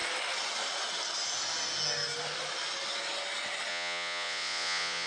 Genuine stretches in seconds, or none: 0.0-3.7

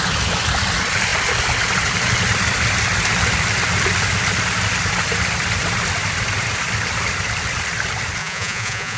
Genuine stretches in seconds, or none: 0.0-8.2

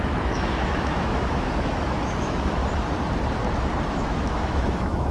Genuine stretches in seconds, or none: 2.6-3.9

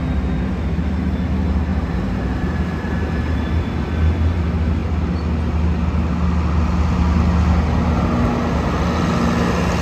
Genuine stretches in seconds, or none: 0.0-1.7; 3.4-9.8